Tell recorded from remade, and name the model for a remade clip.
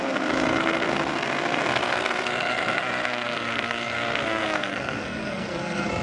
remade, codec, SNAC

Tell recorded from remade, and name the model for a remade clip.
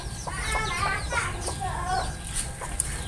remade, vocoder, BigVGAN v2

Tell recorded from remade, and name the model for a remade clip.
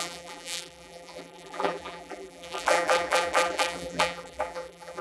remade, vocoder, BigVGAN v2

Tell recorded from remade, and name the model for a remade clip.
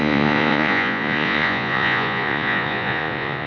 remade, vocoder, Vocos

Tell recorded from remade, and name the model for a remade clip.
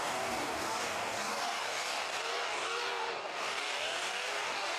remade, codec, DAC